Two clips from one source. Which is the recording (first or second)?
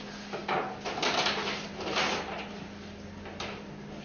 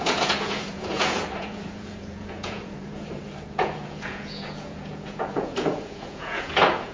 first